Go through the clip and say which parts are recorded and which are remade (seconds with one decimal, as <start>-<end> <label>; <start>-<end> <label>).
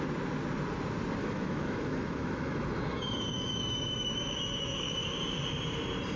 0.0-1.2 recorded; 1.2-4.9 remade; 4.9-6.2 recorded